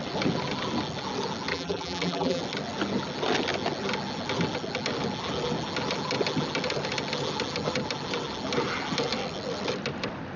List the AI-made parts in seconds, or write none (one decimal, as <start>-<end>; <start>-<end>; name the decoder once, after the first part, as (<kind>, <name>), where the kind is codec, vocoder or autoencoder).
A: 1.5-2.4 (vocoder, BigVGAN v2)